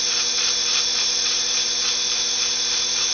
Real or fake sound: fake